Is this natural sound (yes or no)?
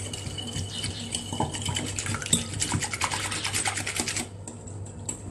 yes